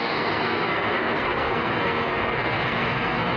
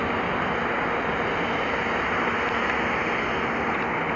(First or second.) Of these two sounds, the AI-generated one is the first